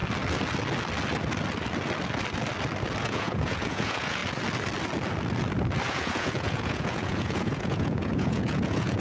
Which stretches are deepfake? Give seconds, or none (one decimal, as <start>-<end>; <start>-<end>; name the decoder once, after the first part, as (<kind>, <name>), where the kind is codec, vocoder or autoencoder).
3.0-4.2 (vocoder, Vocos); 5.9-9.0